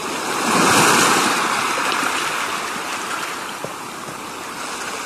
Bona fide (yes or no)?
yes